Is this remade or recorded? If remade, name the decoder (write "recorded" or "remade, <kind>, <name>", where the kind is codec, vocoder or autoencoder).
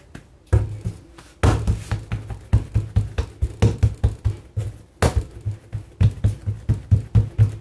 recorded